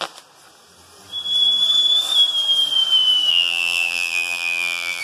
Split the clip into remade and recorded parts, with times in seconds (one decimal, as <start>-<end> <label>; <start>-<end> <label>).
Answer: 0.0-3.3 recorded; 3.3-5.0 remade